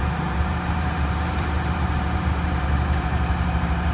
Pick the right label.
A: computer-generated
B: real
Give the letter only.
A